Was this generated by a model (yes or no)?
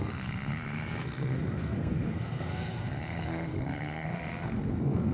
yes